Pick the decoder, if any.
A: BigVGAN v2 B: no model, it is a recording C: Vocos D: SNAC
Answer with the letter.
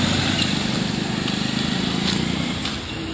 B